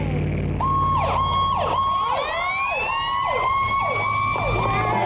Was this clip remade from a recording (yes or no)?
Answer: no